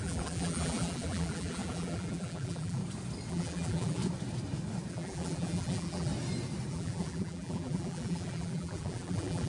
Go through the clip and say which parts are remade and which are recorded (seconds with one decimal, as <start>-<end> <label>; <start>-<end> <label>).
0.0-2.8 remade; 2.8-3.3 recorded; 3.3-4.0 remade; 4.0-4.9 recorded; 4.9-6.1 remade; 6.1-6.7 recorded; 6.7-9.5 remade